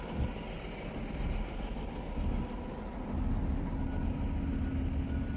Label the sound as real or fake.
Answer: real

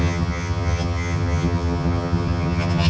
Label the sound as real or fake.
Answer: fake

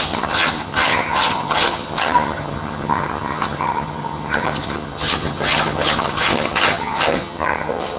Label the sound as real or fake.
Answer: fake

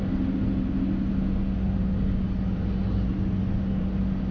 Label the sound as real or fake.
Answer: real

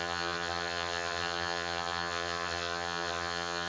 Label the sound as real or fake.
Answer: fake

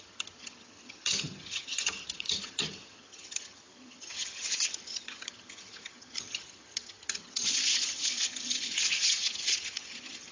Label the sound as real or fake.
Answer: fake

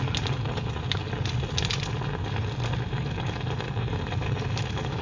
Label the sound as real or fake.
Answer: real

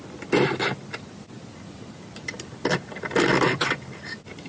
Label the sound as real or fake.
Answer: real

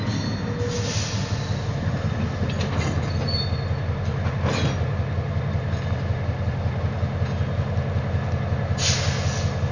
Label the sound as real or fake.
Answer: real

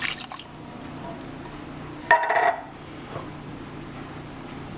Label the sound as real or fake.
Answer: real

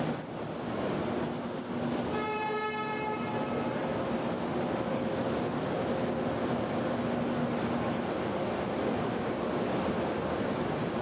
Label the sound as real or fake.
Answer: real